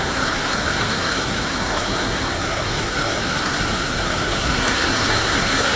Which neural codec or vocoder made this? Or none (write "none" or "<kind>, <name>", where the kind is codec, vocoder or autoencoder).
codec, SNAC